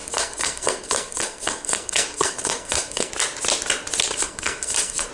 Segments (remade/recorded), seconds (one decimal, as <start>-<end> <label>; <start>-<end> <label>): 0.0-3.1 remade; 3.1-4.2 recorded; 4.2-5.1 remade